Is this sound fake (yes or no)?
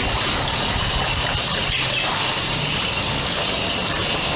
no